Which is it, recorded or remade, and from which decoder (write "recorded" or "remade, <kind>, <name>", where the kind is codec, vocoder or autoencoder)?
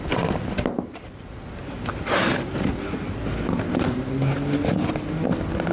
recorded